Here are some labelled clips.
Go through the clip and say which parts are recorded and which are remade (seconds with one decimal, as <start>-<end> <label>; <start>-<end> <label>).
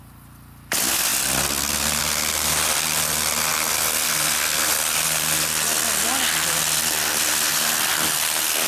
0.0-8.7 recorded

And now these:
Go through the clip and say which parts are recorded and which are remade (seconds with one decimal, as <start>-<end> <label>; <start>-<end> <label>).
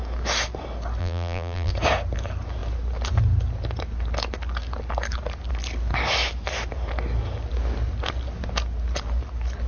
0.0-1.0 recorded; 1.0-1.7 remade; 1.7-9.7 recorded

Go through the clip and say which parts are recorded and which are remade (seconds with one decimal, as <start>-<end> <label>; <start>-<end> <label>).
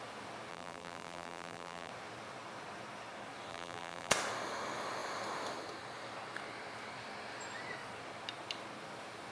0.0-0.5 recorded; 0.5-1.9 remade; 1.9-3.5 recorded; 3.5-4.1 remade; 4.1-9.3 recorded